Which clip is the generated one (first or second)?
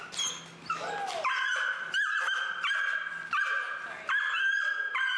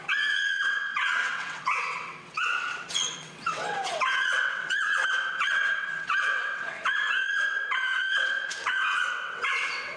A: second